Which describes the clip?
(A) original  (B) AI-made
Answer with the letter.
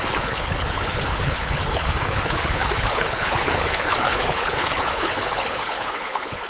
B